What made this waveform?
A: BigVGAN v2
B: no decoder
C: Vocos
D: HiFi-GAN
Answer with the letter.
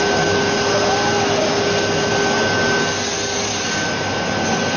B